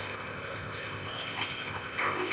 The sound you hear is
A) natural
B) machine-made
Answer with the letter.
B